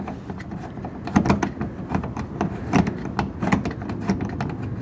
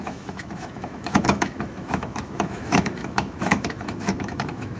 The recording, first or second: first